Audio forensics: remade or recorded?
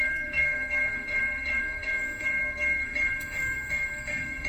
remade